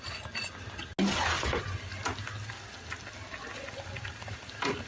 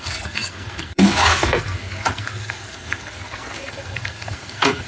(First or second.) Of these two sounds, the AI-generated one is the second